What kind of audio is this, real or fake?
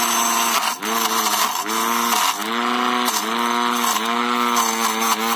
real